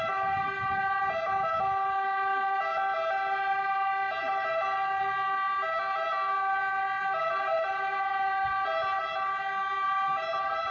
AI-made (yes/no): no